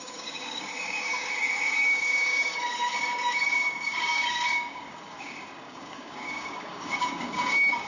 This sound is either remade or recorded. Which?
remade